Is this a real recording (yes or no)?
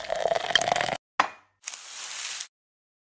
yes